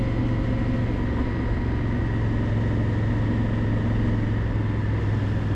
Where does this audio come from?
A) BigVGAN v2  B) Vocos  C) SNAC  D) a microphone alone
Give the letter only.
D